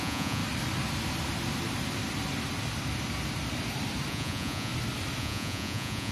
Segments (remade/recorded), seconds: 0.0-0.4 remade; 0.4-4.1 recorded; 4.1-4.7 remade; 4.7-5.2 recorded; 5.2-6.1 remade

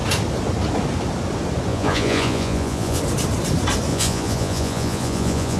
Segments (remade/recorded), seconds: 0.0-1.7 recorded; 1.7-3.0 remade; 3.0-3.9 recorded; 3.9-5.6 remade

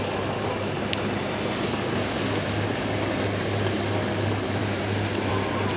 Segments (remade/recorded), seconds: 0.0-5.8 recorded

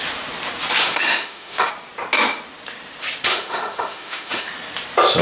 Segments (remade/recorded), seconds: 0.0-0.8 recorded; 0.8-1.7 remade; 1.7-3.3 recorded; 3.3-4.5 remade; 4.5-5.2 recorded

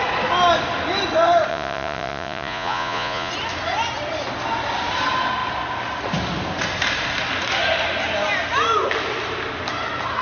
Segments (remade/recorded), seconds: 0.0-1.5 recorded; 1.5-3.3 remade; 3.3-10.2 recorded

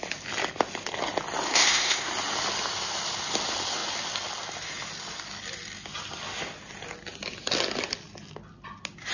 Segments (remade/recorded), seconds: 0.0-1.5 recorded; 1.5-2.1 remade; 2.1-9.1 recorded

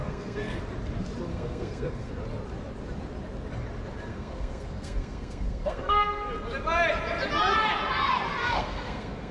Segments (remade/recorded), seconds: 0.0-0.6 remade; 0.6-1.3 recorded; 1.3-2.1 remade; 2.1-4.1 recorded; 4.1-6.3 remade; 6.3-8.4 recorded; 8.4-9.3 remade